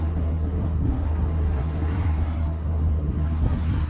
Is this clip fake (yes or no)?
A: yes